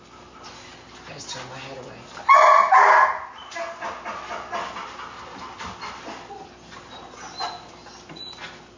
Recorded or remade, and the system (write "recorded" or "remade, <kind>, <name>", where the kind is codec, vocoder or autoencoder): recorded